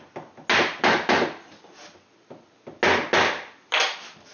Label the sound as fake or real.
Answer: real